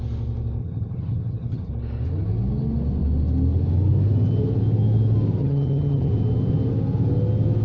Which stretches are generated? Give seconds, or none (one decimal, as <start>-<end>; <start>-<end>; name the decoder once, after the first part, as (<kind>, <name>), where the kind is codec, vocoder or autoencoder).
0.6-1.7 (vocoder, HiFi-GAN); 5.4-6.1

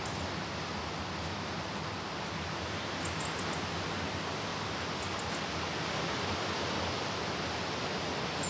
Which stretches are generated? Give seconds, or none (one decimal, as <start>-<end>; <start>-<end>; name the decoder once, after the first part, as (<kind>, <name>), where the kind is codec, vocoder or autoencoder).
none

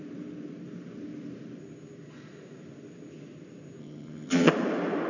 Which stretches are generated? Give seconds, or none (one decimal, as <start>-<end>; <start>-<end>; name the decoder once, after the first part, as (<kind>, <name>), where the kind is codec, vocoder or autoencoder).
3.8-4.5 (vocoder, HiFi-GAN)

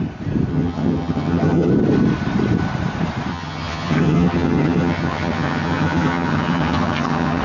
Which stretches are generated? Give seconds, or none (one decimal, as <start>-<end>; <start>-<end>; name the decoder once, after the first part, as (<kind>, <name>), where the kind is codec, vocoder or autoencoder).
0.5-1.7 (vocoder, HiFi-GAN); 3.3-7.4

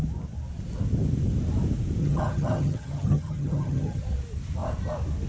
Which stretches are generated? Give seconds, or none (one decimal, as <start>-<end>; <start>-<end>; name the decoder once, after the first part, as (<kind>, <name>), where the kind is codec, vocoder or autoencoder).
2.0-4.0 (vocoder, HiFi-GAN)